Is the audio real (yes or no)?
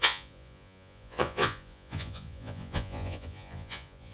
no